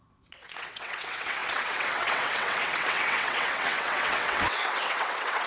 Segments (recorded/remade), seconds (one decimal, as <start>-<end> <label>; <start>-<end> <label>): 0.0-5.5 remade